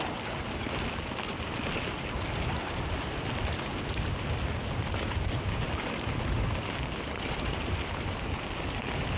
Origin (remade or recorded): recorded